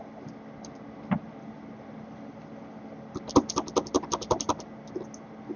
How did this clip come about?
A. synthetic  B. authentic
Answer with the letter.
B